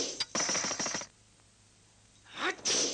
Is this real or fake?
real